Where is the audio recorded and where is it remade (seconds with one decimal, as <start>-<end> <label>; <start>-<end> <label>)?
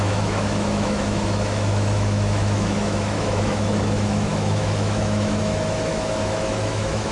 0.0-7.1 remade